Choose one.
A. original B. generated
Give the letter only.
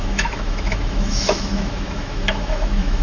B